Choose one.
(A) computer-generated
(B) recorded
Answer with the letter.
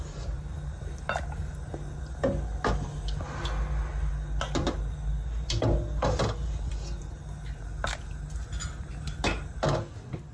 B